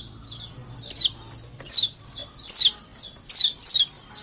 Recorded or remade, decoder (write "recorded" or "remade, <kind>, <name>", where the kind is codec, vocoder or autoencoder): recorded